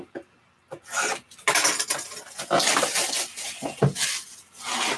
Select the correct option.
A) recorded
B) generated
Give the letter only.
A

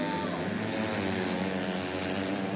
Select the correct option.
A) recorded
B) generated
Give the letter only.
A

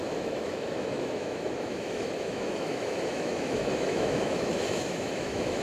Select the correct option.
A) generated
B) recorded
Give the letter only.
A